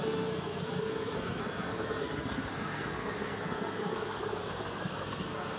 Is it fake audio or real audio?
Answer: fake